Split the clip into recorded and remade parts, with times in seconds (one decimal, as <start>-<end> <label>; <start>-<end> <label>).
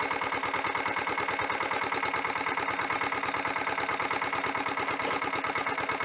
0.0-6.0 recorded